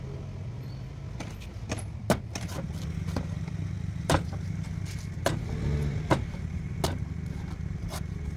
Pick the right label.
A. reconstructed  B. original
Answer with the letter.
B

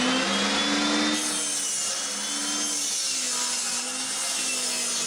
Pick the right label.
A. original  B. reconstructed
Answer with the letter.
A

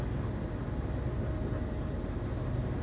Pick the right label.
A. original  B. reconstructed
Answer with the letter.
A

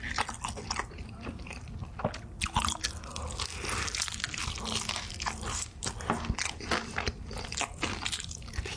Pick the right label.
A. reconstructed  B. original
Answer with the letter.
B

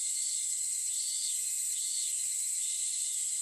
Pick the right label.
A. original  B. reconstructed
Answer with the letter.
B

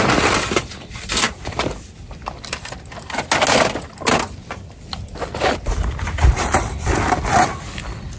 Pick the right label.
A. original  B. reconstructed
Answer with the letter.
A